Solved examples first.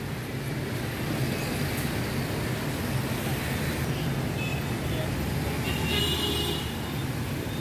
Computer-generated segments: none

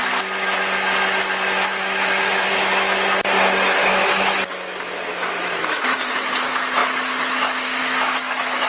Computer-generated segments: 1.8-2.7; 3.8-8.7

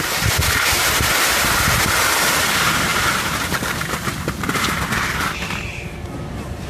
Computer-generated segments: none

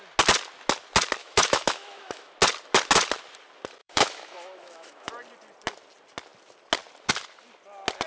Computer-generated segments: 1.2-2.3; 3.8-5.1